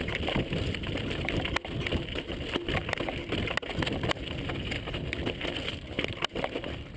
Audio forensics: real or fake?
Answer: real